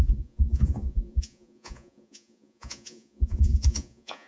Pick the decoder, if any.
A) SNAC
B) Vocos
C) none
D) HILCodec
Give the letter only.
B